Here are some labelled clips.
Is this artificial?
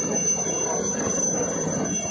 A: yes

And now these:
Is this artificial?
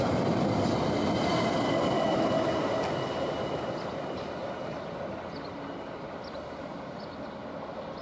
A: no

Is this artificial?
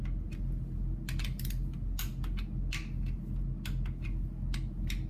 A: no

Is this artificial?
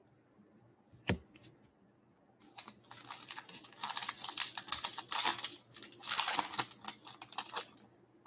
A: no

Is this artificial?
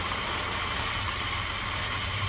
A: yes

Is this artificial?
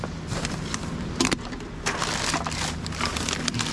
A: no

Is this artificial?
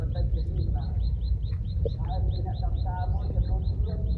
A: no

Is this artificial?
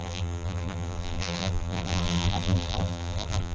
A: yes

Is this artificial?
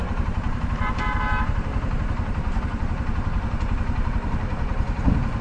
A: yes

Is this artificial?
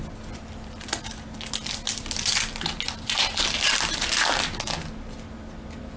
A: no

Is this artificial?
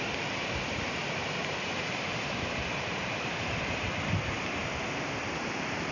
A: yes